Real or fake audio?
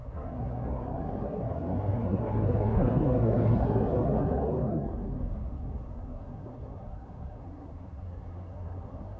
fake